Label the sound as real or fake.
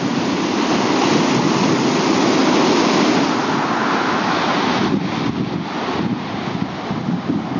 real